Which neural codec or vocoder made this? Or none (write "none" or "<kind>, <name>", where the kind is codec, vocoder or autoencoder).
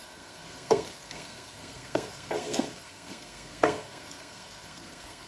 codec, SNAC